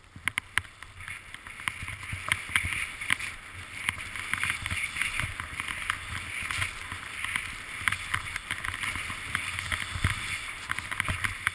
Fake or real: real